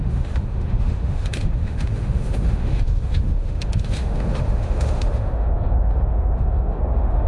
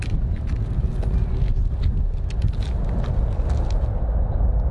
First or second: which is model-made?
first